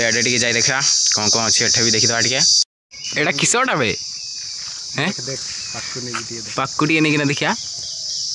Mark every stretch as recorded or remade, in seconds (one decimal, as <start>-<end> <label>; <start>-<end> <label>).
0.0-8.3 recorded